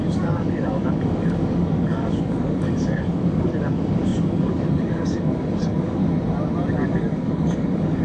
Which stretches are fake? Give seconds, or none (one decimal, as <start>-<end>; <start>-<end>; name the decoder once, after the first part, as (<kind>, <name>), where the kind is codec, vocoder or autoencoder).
0.0-6.0 (codec, DAC); 6.7-8.0